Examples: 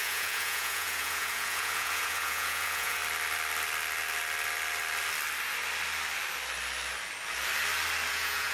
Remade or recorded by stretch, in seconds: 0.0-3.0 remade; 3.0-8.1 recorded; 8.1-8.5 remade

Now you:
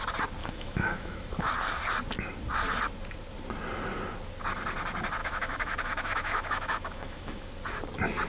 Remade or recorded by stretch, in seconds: 0.0-0.4 recorded; 0.4-1.5 remade; 1.5-5.2 recorded; 5.2-7.5 remade; 7.5-8.3 recorded

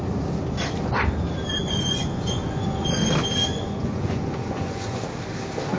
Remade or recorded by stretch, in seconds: 0.0-1.6 recorded; 1.6-3.1 remade; 3.1-3.5 recorded; 3.5-5.0 remade; 5.0-5.8 recorded